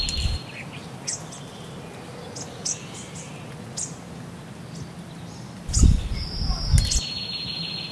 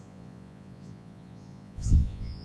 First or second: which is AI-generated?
second